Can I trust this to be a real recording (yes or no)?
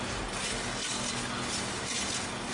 yes